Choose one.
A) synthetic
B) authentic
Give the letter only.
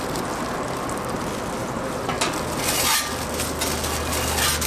B